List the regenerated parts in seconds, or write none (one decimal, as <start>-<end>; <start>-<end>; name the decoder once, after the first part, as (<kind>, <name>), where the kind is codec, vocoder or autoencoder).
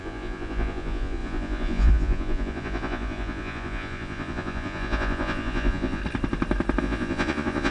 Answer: 0.0-6.0 (vocoder, Vocos); 6.8-7.7